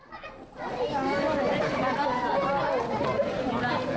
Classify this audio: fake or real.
real